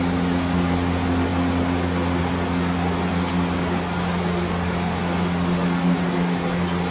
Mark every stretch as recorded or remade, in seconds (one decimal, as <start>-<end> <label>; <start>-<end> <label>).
0.0-6.9 recorded

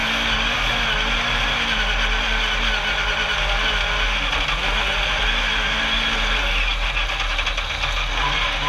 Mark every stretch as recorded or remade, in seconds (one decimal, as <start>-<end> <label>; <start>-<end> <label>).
0.0-8.7 recorded

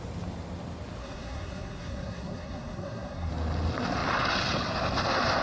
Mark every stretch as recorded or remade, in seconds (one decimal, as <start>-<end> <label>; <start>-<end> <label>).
0.0-1.0 recorded; 1.0-3.3 remade; 3.3-5.4 recorded

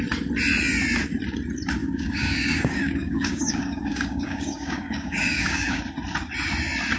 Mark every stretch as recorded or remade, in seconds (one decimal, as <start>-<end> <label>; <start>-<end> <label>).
0.0-1.8 recorded; 1.8-5.8 remade; 5.8-7.0 recorded

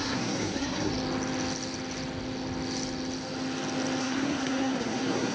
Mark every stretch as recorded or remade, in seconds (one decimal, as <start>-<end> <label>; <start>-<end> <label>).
0.0-0.9 remade; 0.9-4.0 recorded; 4.0-5.3 remade

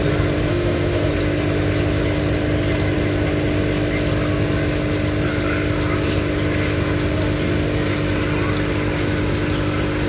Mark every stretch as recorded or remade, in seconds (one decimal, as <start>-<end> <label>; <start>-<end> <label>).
0.0-0.5 recorded; 0.5-1.1 remade; 1.1-10.1 recorded

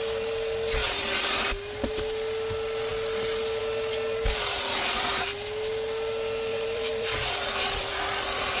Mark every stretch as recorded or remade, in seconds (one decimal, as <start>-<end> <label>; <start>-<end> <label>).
0.0-6.5 recorded; 6.5-7.6 remade; 7.6-8.6 recorded

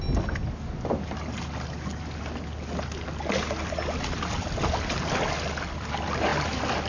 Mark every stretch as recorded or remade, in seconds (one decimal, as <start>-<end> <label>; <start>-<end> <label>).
0.0-6.9 recorded